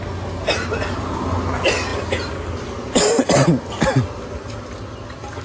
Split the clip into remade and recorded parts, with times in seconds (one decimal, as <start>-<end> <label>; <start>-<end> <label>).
0.0-5.4 recorded